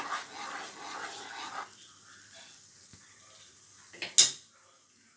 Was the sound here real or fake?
real